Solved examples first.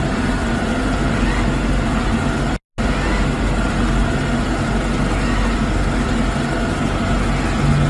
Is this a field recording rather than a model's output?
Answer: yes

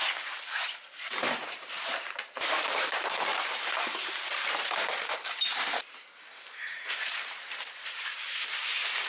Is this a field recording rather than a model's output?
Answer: no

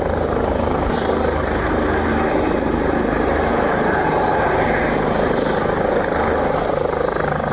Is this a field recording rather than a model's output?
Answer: no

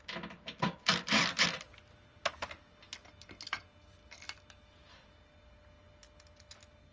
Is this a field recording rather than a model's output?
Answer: yes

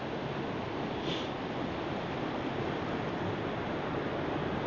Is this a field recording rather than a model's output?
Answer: yes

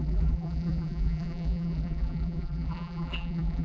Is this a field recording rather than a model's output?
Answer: no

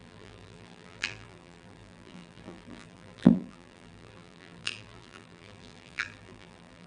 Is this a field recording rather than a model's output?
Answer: no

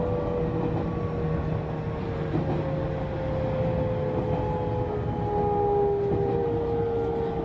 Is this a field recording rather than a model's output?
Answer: yes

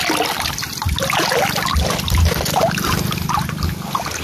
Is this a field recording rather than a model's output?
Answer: yes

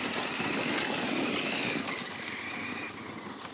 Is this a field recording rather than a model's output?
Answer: yes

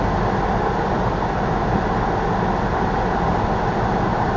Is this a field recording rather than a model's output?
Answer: yes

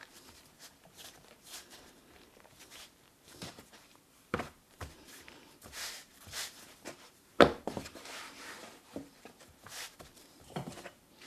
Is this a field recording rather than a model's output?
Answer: no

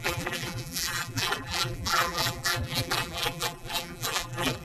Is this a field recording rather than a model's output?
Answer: no